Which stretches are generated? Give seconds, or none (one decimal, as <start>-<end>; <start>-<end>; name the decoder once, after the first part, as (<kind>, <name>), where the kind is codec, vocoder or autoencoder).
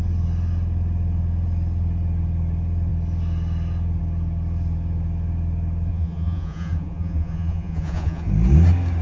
5.9-8.3 (vocoder, Vocos)